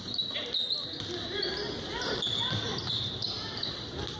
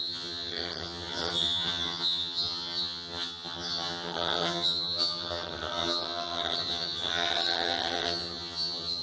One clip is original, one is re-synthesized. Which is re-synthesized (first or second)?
second